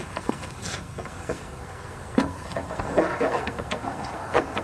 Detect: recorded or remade remade